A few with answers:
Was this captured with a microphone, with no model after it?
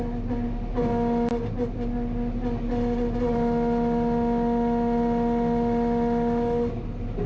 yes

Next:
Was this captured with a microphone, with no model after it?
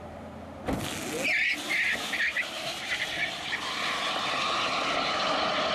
yes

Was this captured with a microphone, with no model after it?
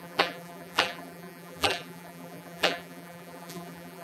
no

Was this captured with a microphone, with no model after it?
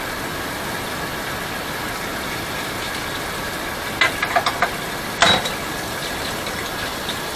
yes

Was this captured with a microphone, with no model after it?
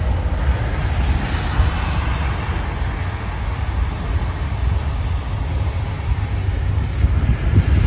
yes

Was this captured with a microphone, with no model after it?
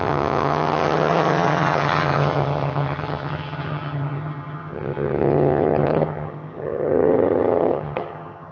no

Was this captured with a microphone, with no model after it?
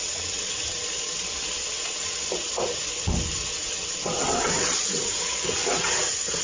no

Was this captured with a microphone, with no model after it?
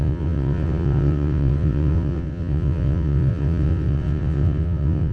no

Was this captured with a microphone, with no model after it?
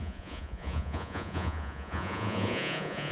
no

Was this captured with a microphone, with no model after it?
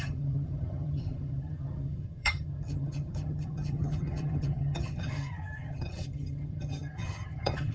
no